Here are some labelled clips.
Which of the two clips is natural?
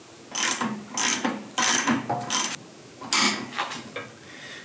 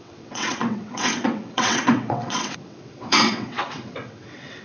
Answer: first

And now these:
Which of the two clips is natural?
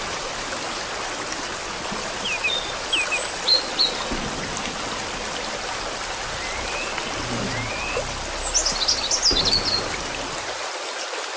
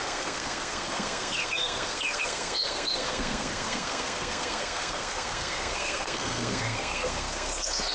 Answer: first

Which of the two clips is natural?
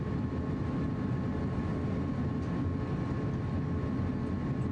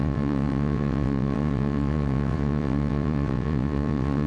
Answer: first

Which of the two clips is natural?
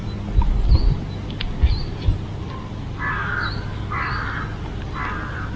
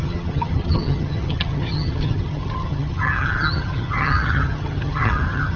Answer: first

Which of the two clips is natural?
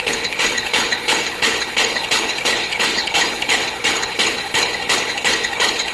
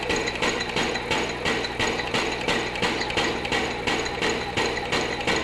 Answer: second